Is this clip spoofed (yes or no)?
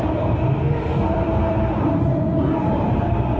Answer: yes